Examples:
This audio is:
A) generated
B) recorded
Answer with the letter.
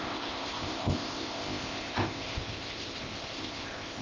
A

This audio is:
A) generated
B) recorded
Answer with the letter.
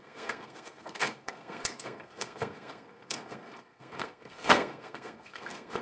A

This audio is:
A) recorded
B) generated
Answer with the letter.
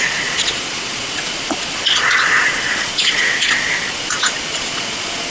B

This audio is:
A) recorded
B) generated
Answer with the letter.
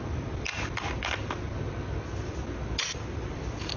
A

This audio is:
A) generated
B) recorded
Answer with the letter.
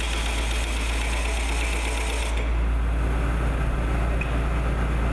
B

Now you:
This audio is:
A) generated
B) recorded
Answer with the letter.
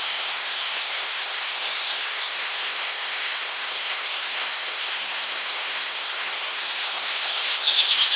A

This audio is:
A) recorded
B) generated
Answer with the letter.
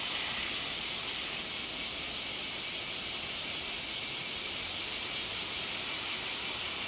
A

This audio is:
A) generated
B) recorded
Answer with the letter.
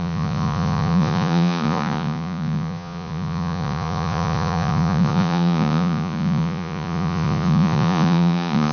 A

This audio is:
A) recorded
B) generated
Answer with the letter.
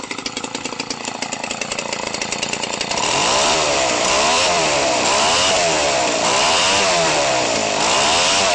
B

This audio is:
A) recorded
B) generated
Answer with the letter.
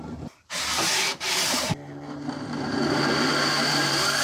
B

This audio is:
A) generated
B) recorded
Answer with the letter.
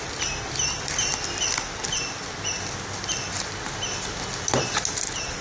B